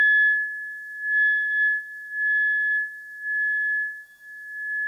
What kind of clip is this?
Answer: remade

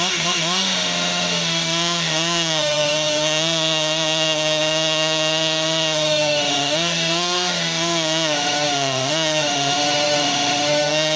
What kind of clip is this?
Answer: remade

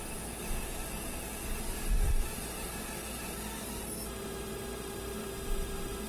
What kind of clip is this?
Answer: recorded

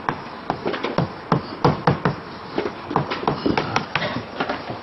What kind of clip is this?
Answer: recorded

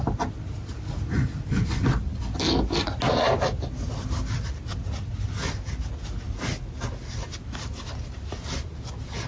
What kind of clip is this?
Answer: recorded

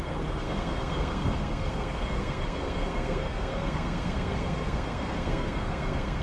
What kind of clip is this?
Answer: remade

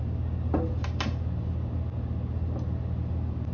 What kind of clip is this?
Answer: recorded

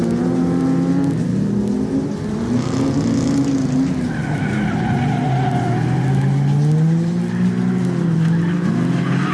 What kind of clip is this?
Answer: recorded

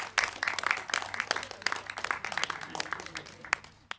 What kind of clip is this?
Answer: recorded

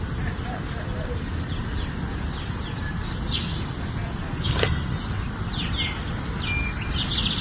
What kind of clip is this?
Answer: recorded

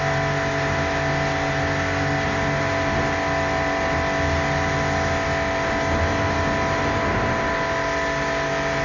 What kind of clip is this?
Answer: recorded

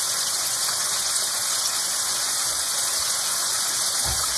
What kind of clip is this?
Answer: remade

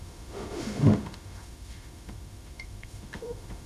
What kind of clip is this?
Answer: remade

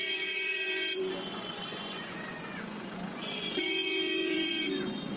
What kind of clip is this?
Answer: remade